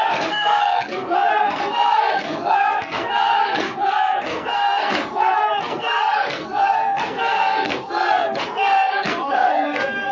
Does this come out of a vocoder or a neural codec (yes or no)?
yes